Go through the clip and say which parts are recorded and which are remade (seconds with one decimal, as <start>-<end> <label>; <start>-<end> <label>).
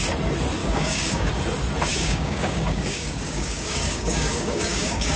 0.0-0.6 recorded; 0.6-1.3 remade; 1.3-1.9 recorded; 1.9-5.2 remade